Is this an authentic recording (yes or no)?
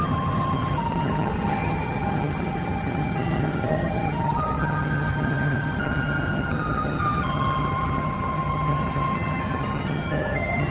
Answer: no